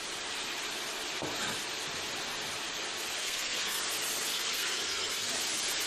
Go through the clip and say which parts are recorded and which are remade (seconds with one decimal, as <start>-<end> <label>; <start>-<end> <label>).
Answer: 0.0-3.2 recorded; 3.2-3.8 remade; 3.8-4.3 recorded; 4.3-5.3 remade; 5.3-5.9 recorded